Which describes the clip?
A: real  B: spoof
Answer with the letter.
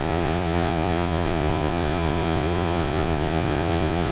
B